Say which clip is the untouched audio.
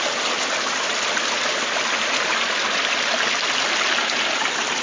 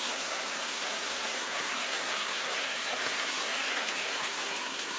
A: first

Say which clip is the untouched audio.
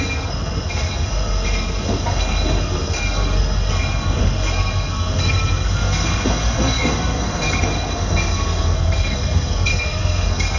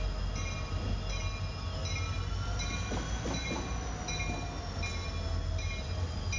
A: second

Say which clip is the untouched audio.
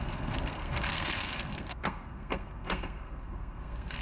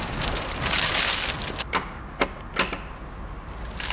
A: second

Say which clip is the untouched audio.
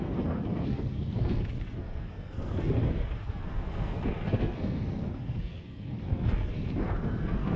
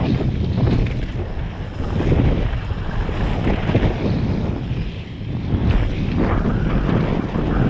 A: second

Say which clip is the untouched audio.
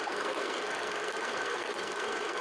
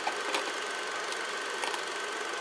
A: second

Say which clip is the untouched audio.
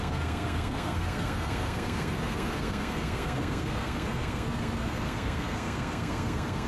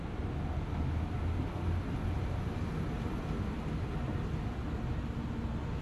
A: second